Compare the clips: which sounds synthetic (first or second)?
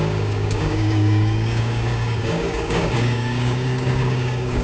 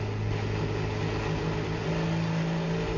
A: first